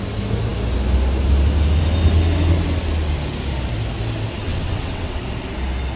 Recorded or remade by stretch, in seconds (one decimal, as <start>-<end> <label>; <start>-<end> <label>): 0.0-4.4 recorded; 4.4-5.2 remade; 5.2-6.0 recorded